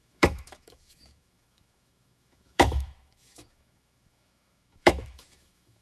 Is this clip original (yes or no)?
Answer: no